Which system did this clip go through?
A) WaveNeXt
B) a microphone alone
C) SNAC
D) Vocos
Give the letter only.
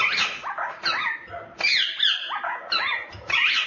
B